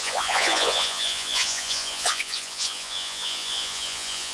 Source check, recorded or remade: remade